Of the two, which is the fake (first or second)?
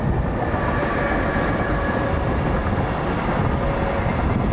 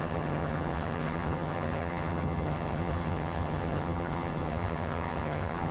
second